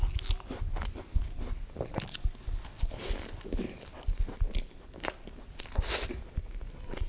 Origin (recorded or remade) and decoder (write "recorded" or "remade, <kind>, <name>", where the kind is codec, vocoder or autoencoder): recorded